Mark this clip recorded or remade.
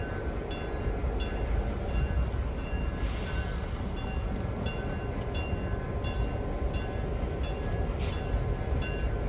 recorded